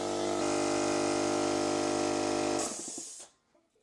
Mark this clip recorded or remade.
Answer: recorded